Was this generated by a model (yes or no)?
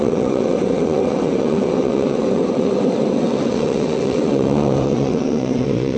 yes